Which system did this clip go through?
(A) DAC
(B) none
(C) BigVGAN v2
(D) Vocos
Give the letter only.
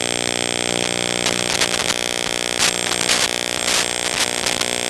B